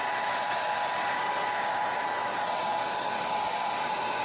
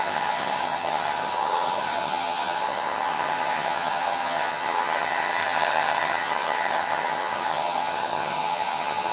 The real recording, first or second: first